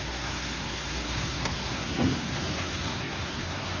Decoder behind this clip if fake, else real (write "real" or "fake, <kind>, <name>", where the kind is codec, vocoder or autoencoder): fake, codec, SNAC